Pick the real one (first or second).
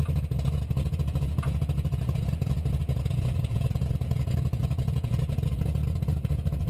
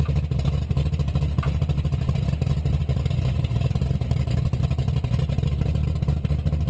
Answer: second